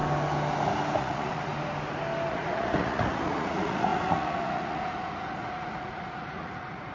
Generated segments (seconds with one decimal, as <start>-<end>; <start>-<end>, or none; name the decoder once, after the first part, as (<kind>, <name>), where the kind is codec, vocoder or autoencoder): 1.0-1.5 (vocoder, Vocos); 2.3-6.9